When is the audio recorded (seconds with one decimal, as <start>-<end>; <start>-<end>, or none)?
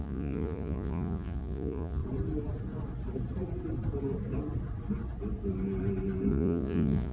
2.0-6.3